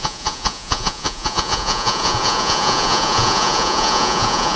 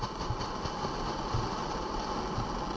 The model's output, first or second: first